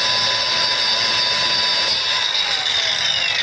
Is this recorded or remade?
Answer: recorded